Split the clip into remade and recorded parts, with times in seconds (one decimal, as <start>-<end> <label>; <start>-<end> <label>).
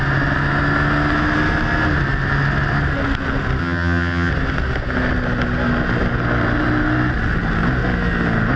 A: 0.0-3.6 recorded; 3.6-4.3 remade; 4.3-8.6 recorded